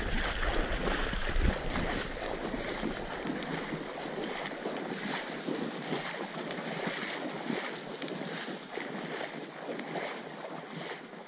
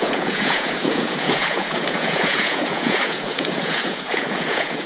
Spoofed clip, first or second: second